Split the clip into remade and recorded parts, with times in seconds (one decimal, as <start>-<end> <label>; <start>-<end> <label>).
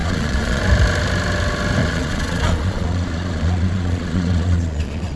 0.0-0.6 remade; 0.6-1.8 recorded; 1.8-5.2 remade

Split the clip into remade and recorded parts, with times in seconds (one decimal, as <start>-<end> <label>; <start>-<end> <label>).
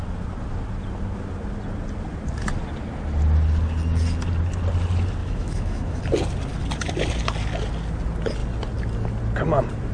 0.0-5.2 recorded; 5.2-6.0 remade; 6.0-9.9 recorded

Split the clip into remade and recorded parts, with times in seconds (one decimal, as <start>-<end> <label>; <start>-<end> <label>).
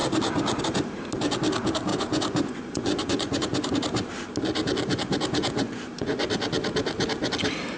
0.0-1.9 recorded; 1.9-3.7 remade; 3.7-5.4 recorded; 5.4-6.2 remade; 6.2-7.8 recorded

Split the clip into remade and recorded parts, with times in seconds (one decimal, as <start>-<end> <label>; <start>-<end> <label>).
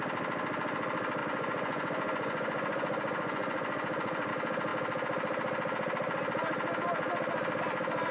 0.0-1.2 recorded; 1.2-4.3 remade; 4.3-8.1 recorded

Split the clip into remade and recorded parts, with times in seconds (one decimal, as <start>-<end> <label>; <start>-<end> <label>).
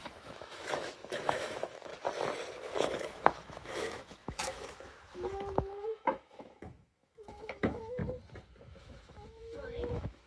0.0-1.9 remade; 1.9-2.5 recorded; 2.5-8.0 remade; 8.0-8.8 recorded; 8.8-10.3 remade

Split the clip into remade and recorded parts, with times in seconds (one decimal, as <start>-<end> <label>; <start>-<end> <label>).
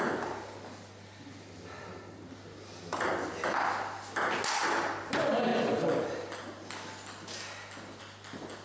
0.0-8.6 recorded